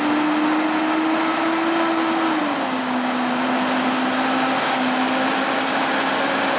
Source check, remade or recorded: recorded